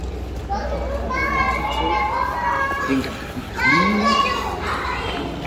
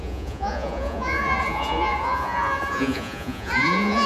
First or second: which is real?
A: first